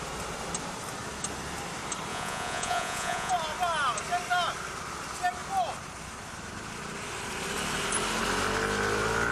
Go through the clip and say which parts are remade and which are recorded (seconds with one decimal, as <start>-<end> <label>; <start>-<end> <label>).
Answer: 0.0-2.1 recorded; 2.1-3.3 remade; 3.3-9.3 recorded